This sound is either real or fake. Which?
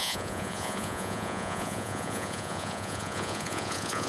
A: fake